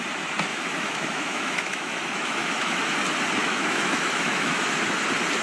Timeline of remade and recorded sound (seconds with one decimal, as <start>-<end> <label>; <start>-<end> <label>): 0.0-0.5 recorded; 0.5-2.8 remade; 2.8-3.4 recorded; 3.4-4.6 remade; 4.6-5.4 recorded

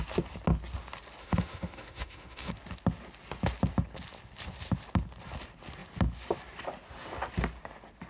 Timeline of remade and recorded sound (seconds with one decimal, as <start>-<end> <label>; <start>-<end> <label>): 0.0-1.2 recorded; 1.2-2.5 remade; 2.5-8.1 recorded

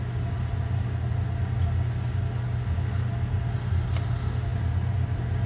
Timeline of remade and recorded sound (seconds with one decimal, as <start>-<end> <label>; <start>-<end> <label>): 0.0-5.5 recorded